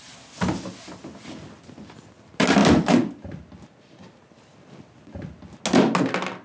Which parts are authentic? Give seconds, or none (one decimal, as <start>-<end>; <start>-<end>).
0.0-6.4